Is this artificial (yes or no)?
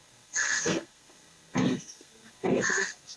yes